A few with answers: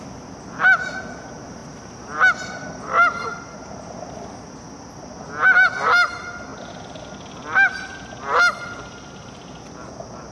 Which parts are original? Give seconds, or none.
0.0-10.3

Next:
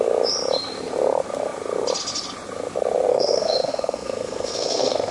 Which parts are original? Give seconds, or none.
0.0-3.1